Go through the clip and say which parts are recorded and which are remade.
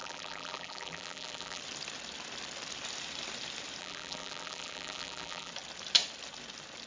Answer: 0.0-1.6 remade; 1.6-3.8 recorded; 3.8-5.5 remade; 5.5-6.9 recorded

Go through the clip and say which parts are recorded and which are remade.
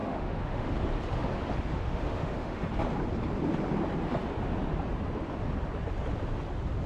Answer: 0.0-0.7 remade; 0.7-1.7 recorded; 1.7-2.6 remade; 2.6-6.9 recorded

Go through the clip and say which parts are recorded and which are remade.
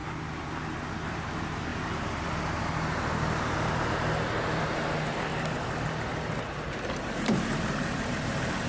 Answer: 0.0-0.9 recorded; 0.9-5.3 remade; 5.3-6.4 recorded; 6.4-8.7 remade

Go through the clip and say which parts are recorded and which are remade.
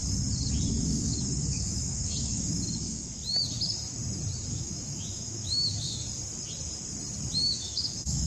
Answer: 0.0-0.7 recorded; 0.7-3.2 remade; 3.2-4.5 recorded; 4.5-6.0 remade; 6.0-7.5 recorded; 7.5-8.3 remade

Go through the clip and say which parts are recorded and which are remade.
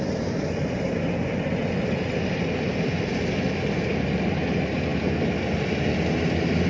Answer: 0.0-6.7 recorded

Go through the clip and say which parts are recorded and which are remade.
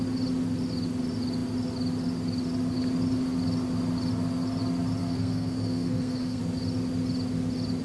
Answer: 0.0-5.0 recorded; 5.0-6.4 remade; 6.4-7.8 recorded